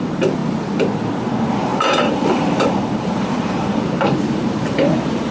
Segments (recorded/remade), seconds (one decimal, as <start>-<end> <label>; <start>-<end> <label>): 0.0-0.4 remade; 0.4-1.1 recorded; 1.1-5.3 remade